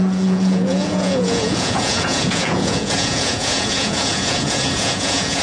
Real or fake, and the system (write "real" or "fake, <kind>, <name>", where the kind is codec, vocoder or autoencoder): fake, vocoder, Vocos